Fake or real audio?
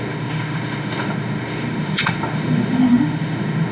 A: fake